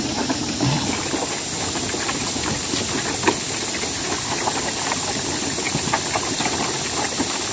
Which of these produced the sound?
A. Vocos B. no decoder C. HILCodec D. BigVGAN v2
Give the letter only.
B